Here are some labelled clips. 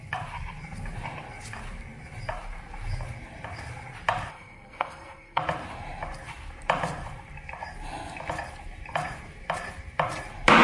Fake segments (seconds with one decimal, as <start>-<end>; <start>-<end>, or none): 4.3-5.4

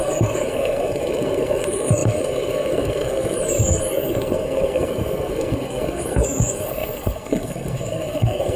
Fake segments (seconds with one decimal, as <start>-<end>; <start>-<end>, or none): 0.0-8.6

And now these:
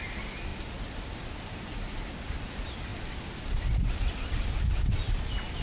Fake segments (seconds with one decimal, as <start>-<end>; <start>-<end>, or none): none